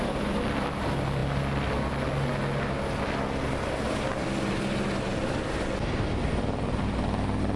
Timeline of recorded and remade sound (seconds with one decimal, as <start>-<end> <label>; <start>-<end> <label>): 0.0-7.6 recorded